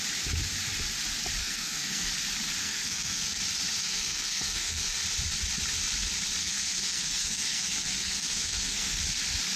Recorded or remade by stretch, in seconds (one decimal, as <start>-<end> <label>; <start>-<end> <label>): 0.0-1.4 recorded; 1.4-2.1 remade; 2.1-2.6 recorded; 2.6-3.4 remade; 3.4-3.8 recorded; 3.8-5.0 remade; 5.0-6.4 recorded; 6.4-9.0 remade; 9.0-9.6 recorded

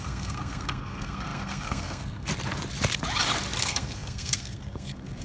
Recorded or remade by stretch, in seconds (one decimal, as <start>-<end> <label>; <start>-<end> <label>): 0.0-2.3 remade; 2.3-3.6 recorded; 3.6-5.2 remade

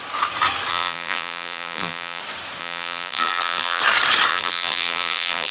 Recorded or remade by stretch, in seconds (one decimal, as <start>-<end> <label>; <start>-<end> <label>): 0.0-0.7 recorded; 0.7-2.2 remade; 2.2-2.6 recorded; 2.6-3.8 remade; 3.8-4.3 recorded; 4.3-5.5 remade

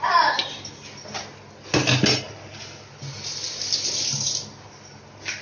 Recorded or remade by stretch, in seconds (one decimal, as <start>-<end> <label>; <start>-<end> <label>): 0.0-5.4 recorded

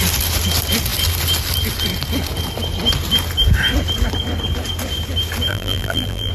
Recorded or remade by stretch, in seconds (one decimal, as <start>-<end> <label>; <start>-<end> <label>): 0.0-5.5 recorded; 5.5-6.3 remade